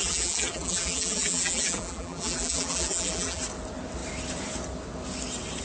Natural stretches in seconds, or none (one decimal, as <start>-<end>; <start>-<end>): 3.4-5.6